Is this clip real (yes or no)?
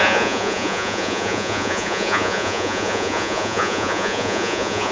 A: no